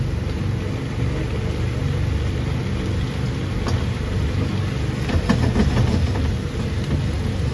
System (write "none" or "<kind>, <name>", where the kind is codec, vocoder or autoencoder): none